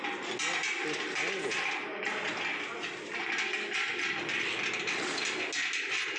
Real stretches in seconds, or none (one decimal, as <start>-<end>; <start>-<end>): 0.0-6.2